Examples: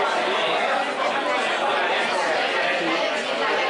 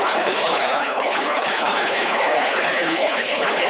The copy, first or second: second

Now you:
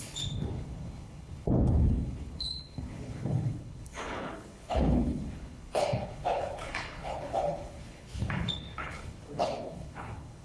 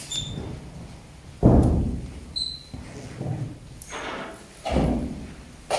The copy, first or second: first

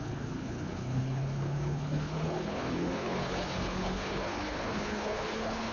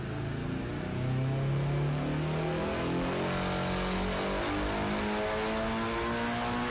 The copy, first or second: first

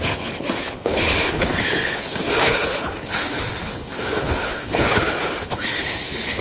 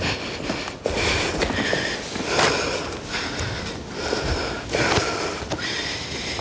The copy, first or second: first